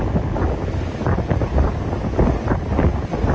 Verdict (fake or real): real